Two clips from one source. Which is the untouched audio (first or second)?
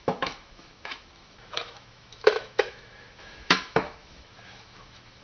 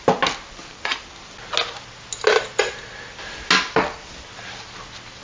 second